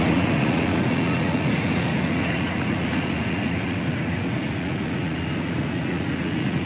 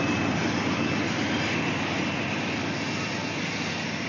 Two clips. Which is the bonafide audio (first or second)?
second